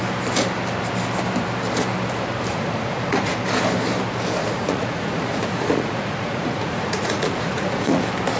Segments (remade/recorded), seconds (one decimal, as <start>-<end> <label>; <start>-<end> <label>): 0.0-2.5 recorded; 2.5-3.3 remade; 3.3-4.4 recorded; 4.4-8.0 remade; 8.0-8.4 recorded